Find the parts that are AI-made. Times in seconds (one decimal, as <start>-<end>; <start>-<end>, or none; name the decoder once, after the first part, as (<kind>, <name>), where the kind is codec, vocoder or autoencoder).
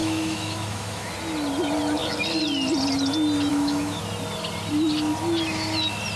0.0-1.1 (autoencoder, DAC-VAE); 3.5-4.0